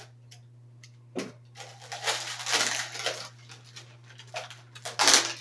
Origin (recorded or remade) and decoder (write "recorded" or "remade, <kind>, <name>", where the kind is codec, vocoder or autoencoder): recorded